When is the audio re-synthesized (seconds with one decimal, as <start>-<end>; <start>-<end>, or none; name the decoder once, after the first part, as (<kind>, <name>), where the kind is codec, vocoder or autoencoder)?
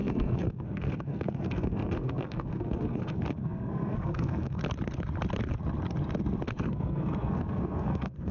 0.0-4.6 (codec, SNAC); 6.6-8.3